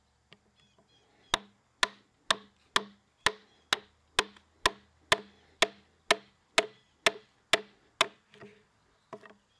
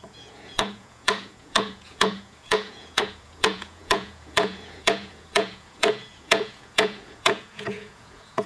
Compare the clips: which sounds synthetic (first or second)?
second